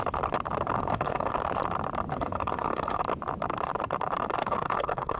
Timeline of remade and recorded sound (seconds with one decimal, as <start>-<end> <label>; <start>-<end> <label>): 0.0-0.8 recorded; 0.8-1.3 remade; 1.3-2.1 recorded; 2.1-3.0 remade; 3.0-4.4 recorded; 4.4-5.2 remade